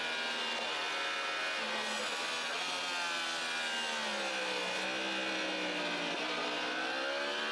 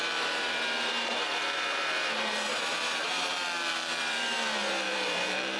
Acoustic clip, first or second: first